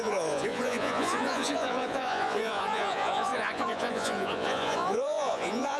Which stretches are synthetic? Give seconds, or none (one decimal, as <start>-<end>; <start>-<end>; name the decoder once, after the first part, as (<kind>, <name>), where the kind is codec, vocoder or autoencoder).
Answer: 0.0-5.8 (vocoder, Vocos)